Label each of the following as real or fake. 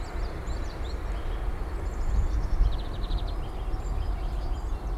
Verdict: real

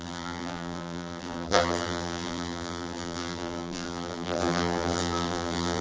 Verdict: fake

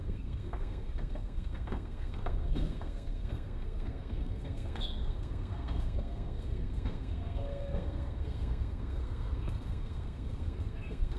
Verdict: fake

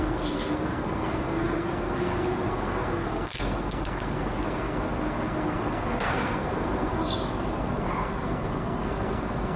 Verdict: fake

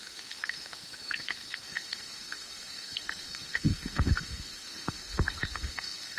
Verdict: fake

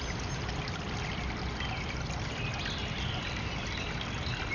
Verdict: real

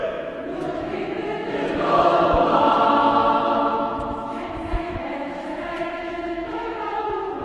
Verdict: fake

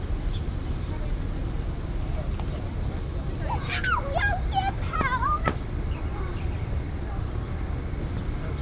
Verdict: real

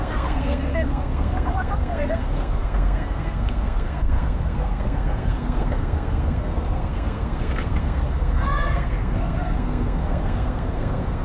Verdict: fake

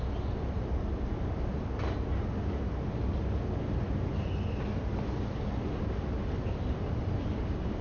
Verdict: real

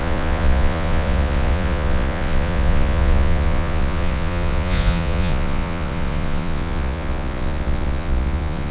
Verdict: fake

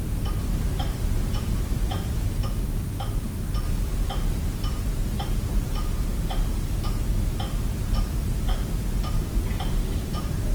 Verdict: real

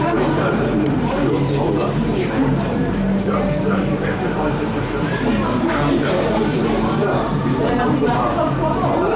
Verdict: fake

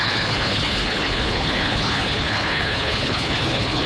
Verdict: fake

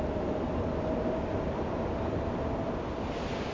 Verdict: real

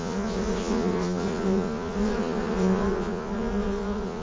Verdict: fake